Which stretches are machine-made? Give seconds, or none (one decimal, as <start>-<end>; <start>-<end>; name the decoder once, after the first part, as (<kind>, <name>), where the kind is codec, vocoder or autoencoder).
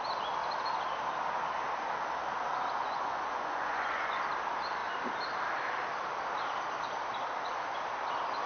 2.8-4.2 (vocoder, Vocos)